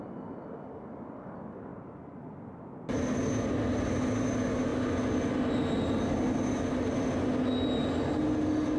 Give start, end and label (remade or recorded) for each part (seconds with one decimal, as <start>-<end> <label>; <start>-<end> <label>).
0.0-1.7 recorded; 1.7-2.2 remade; 2.2-8.8 recorded